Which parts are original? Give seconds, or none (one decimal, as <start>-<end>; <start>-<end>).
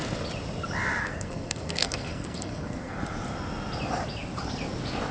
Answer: 0.0-1.0; 3.0-5.1